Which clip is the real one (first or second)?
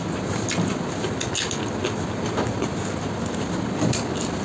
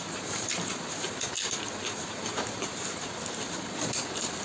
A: first